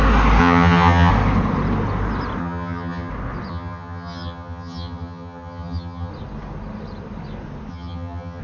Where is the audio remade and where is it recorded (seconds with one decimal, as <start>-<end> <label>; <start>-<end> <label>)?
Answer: 0.0-0.4 recorded; 0.4-1.1 remade; 1.1-2.4 recorded; 2.4-3.1 remade; 3.1-3.5 recorded; 3.5-6.1 remade; 6.1-7.7 recorded; 7.7-8.4 remade

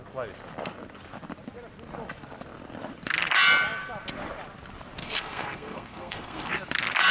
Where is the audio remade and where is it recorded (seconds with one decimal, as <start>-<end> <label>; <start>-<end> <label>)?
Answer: 0.0-5.0 recorded; 5.0-6.5 remade; 6.5-7.1 recorded

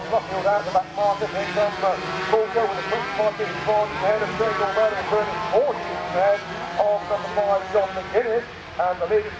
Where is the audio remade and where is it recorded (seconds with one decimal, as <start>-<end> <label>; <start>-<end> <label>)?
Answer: 0.0-9.4 recorded